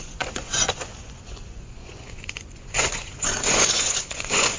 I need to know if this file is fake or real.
fake